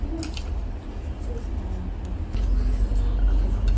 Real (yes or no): yes